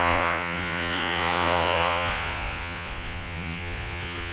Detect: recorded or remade remade